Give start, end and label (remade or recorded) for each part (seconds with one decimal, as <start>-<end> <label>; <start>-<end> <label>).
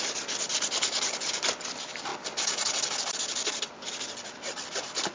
0.0-5.1 recorded